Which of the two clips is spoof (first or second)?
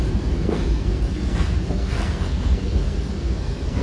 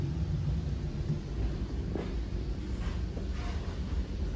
first